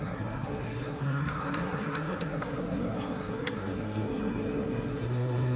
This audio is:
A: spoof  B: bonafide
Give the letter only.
A